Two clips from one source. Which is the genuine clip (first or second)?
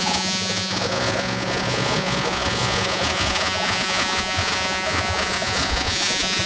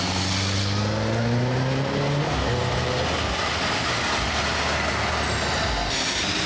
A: second